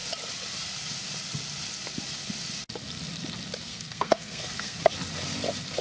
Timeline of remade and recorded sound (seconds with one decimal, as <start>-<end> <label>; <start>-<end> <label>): 0.0-3.7 recorded; 3.7-4.8 remade; 4.8-5.8 recorded